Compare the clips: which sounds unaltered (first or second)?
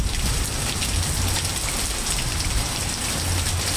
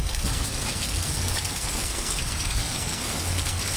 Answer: first